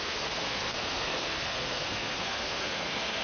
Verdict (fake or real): fake